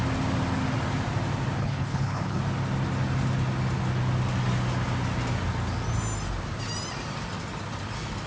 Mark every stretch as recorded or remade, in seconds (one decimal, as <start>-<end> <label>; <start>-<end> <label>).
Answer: 0.0-1.6 recorded; 1.6-2.4 remade; 2.4-8.3 recorded